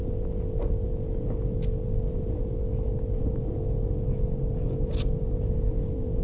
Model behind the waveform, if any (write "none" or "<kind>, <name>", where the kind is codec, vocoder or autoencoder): none